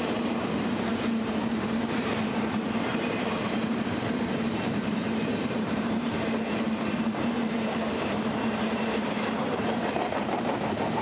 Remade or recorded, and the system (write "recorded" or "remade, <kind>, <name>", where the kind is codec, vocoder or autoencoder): remade, vocoder, BigVGAN v2